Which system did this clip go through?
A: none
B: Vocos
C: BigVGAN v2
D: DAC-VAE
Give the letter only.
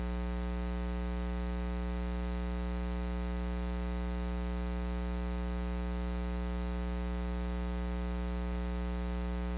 A